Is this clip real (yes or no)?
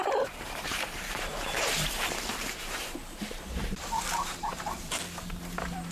no